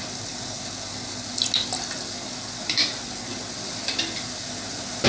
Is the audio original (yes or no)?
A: yes